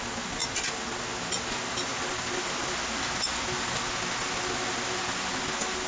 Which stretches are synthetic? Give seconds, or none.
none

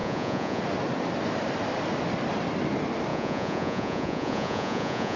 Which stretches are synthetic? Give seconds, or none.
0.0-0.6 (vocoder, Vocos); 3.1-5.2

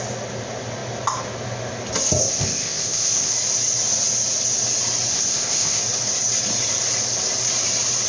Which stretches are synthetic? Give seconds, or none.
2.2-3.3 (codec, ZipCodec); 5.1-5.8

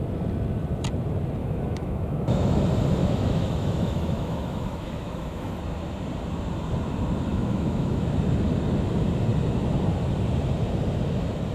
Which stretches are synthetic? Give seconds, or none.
1.4-2.6 (autoencoder, DAC-VAE); 3.0-5.5; 7.3-8.0

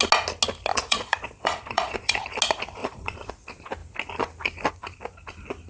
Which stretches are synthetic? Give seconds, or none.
0.7-2.1 (vocoder, Vocos); 2.8-3.3

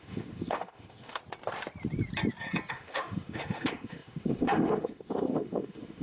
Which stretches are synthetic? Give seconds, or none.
0.0-1.2 (autoencoder, DAC-VAE); 2.7-6.0

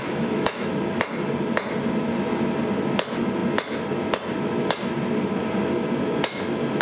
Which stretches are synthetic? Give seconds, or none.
0.0-0.7 (autoencoder, DAC-VAE)

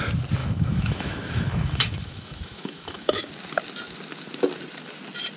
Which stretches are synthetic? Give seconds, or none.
0.4-3.3 (autoencoder, DAC-VAE)